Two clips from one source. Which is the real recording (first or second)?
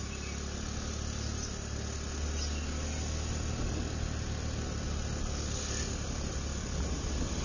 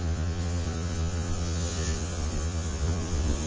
first